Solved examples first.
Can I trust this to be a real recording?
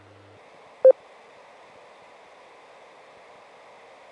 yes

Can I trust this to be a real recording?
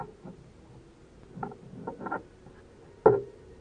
yes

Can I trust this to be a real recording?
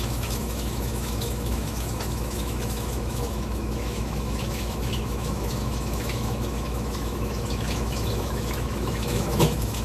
no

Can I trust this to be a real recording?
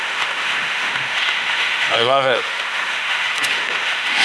no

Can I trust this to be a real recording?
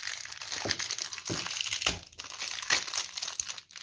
yes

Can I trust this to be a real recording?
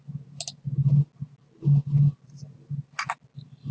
yes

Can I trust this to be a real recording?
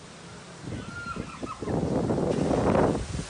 yes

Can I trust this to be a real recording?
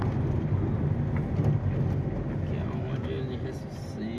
yes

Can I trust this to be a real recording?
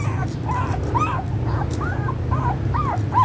yes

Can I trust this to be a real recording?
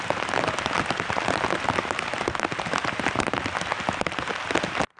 yes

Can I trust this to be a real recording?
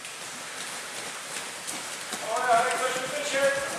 yes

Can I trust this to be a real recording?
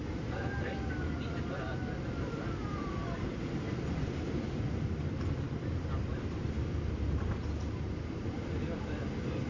no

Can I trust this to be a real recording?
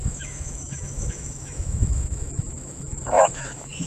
no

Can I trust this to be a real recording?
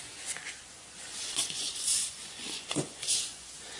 no